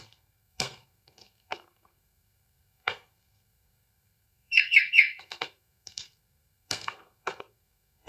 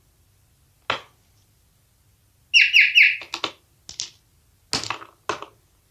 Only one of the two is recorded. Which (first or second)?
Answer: second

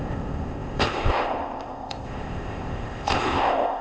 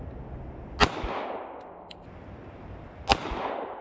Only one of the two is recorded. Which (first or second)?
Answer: second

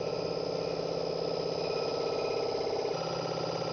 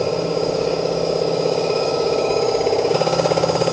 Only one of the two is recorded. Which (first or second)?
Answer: first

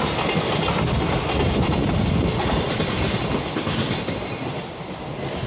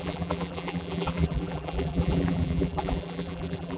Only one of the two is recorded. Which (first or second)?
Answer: first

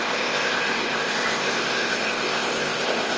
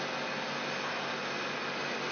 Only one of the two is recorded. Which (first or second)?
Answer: second